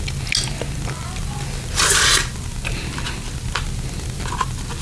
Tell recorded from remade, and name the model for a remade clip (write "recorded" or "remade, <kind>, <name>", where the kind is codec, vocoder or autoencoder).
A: recorded